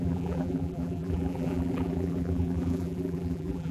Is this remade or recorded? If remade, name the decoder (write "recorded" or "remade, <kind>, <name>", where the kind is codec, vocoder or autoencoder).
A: remade, vocoder, BigVGAN v2